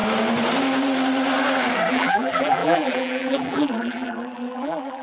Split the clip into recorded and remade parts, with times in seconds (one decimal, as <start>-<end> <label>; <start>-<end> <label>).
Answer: 0.0-1.9 recorded; 1.9-5.0 remade